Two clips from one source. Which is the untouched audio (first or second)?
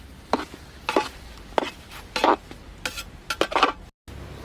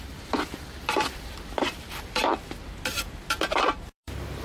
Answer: first